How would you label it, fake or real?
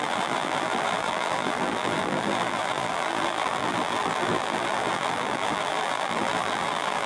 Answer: fake